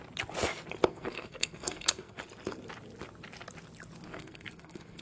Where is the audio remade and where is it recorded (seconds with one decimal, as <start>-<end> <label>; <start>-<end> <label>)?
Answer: 0.0-0.9 recorded; 0.9-2.2 remade; 2.2-4.2 recorded; 4.2-5.0 remade